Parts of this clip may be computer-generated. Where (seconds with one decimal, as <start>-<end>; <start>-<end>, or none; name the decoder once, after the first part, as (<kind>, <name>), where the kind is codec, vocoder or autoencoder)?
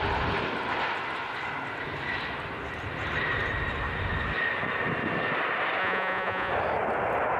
5.8-6.5 (vocoder, Vocos)